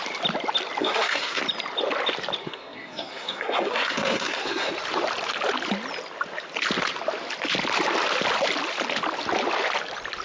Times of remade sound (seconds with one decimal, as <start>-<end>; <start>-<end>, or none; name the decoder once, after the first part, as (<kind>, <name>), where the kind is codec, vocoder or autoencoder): 0.8-1.4 (codec, SNAC); 2.4-4.7